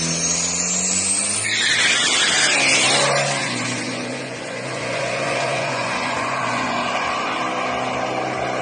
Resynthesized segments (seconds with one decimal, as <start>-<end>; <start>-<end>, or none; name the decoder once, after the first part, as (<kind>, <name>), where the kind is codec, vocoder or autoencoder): 3.4-7.4 (vocoder, Vocos)